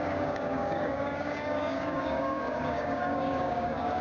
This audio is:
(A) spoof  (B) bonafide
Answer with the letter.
A